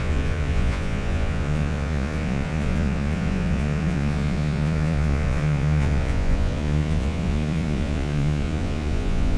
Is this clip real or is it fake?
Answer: fake